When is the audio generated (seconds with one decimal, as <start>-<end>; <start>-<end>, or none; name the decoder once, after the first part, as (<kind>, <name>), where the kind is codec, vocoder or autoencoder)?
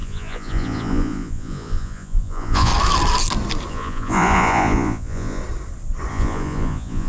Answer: 0.0-2.7 (vocoder, Vocos); 3.7-5.4; 6.1-7.1